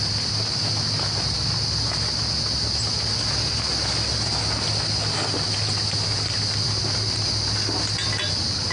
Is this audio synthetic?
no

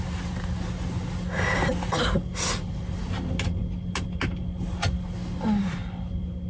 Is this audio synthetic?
no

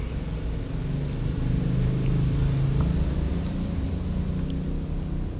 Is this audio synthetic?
no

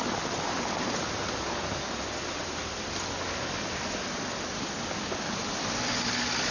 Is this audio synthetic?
no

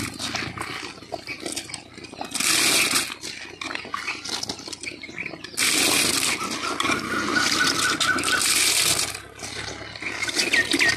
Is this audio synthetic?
no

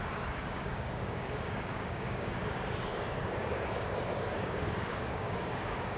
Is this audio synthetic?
yes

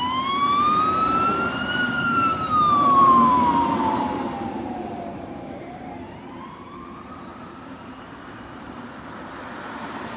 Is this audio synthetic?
yes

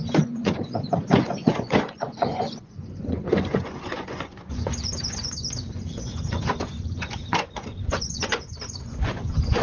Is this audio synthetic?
yes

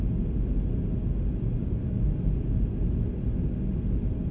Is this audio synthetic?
no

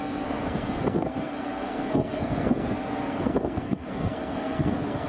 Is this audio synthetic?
yes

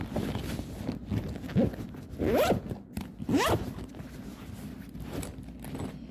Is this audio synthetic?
no